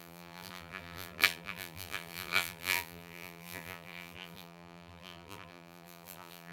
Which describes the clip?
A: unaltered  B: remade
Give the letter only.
B